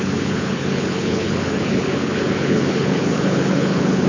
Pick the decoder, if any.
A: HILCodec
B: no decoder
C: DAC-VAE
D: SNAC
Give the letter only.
A